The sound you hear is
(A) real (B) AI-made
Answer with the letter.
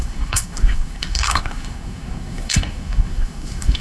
B